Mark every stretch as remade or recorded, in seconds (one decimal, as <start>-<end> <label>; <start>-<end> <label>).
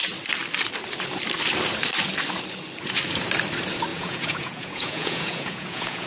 0.0-3.9 recorded; 3.9-6.1 remade